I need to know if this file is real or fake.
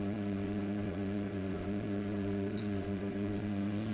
fake